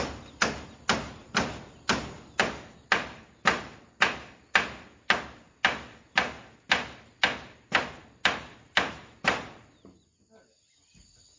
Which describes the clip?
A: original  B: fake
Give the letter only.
A